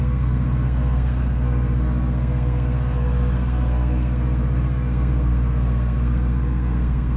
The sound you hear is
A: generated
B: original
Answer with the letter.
A